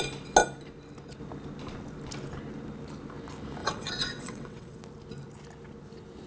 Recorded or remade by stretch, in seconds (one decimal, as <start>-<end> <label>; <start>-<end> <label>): 0.0-3.6 recorded; 3.6-4.8 remade; 4.8-6.3 recorded